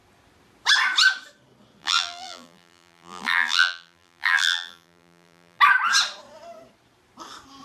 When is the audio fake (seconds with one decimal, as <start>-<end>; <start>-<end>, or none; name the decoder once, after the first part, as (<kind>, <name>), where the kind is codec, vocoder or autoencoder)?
1.8-5.6 (vocoder, BigVGAN v2)